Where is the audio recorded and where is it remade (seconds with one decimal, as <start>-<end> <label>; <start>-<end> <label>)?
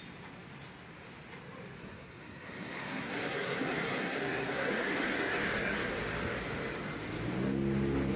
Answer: 0.0-1.8 recorded; 1.8-5.9 remade; 5.9-8.2 recorded